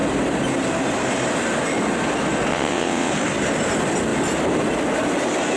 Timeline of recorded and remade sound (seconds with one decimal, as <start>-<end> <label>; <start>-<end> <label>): 0.0-2.5 recorded; 2.5-3.1 remade; 3.1-5.6 recorded